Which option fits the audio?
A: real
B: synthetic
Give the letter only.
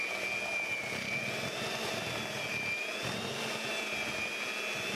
A